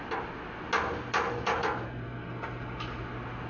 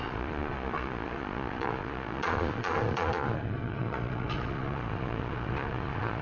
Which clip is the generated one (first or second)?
second